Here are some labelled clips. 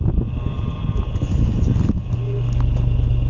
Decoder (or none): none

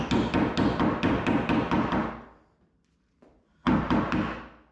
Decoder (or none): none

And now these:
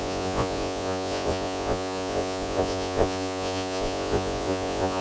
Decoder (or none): vocoder, Vocos